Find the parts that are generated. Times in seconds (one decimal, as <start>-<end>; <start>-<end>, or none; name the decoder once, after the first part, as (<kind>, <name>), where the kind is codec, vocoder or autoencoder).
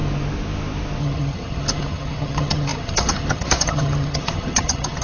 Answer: 1.0-5.0 (vocoder, HiFi-GAN)